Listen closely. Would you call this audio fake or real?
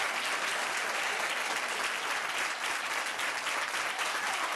real